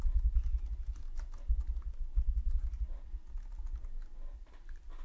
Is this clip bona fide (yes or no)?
yes